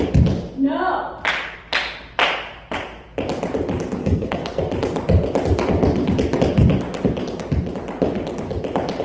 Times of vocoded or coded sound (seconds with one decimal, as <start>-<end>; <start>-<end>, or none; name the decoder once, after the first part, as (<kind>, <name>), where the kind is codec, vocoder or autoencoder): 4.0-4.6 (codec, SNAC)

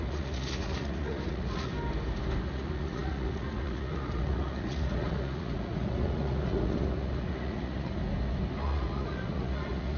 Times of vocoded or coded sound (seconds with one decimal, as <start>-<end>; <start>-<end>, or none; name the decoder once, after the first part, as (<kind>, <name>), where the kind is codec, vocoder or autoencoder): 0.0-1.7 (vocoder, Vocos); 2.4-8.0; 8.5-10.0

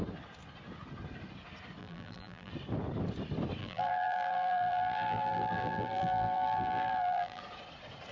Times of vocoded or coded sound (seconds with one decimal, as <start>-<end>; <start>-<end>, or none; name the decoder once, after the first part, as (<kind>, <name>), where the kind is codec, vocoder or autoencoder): 1.8-2.5 (vocoder, BigVGAN v2); 3.6-7.4

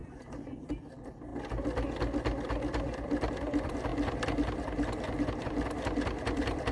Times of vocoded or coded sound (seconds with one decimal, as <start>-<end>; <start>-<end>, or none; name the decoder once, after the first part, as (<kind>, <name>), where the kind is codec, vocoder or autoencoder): 0.0-1.3 (vocoder, BigVGAN v2); 3.3-6.7

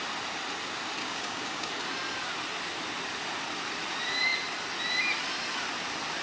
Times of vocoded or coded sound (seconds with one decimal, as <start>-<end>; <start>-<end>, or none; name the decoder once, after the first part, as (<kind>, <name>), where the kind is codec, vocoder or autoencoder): 1.0-1.7 (codec, DAC)

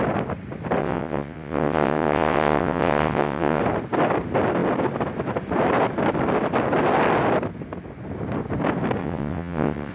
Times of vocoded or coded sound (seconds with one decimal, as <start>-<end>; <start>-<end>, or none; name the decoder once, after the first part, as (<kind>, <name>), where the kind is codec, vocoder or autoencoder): 0.8-3.6 (vocoder, WaveNeXt); 9.0-9.9

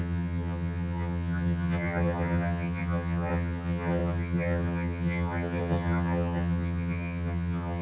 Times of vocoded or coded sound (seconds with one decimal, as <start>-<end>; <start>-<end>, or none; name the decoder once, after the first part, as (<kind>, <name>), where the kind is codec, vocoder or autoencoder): 0.0-7.8 (vocoder, HiFi-GAN)

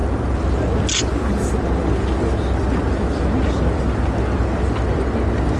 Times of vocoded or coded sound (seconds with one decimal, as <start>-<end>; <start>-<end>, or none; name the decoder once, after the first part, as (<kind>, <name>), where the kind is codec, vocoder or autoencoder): none